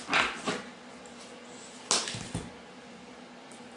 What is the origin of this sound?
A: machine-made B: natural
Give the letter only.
B